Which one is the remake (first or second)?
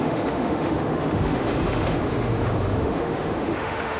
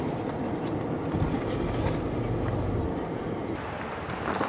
first